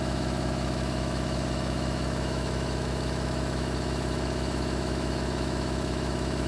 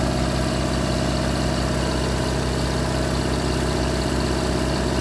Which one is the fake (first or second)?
first